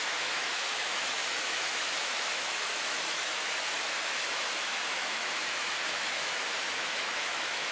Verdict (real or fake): fake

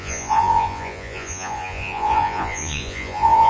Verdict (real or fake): fake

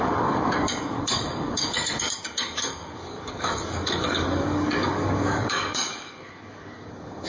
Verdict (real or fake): fake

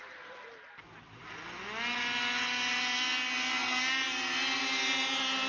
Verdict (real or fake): real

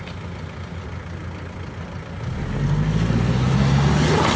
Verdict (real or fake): real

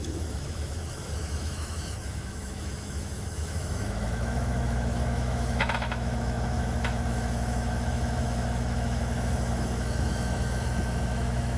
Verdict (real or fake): fake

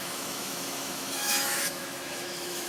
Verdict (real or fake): fake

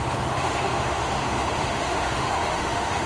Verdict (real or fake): fake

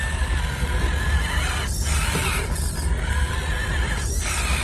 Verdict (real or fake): real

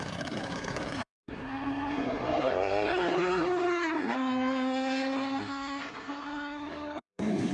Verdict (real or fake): fake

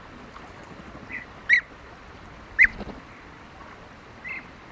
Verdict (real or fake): real